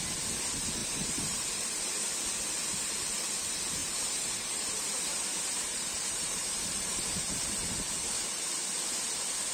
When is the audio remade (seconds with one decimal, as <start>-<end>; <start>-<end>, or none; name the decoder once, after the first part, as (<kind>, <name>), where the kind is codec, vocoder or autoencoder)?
0.8-1.8 (vocoder, BigVGAN v2); 3.8-5.0; 5.7-7.0